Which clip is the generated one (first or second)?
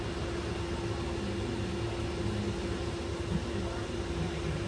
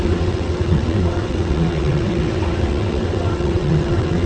second